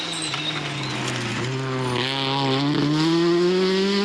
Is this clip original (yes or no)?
yes